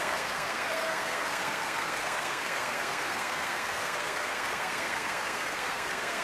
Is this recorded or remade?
remade